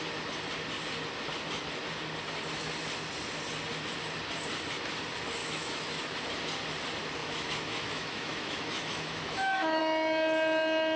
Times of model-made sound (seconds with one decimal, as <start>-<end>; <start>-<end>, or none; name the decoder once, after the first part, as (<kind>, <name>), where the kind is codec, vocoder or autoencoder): 5.4-6.0 (autoencoder, DAC-VAE); 7.2-9.8